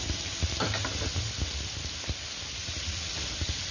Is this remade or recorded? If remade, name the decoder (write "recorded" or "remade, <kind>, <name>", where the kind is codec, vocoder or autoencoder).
recorded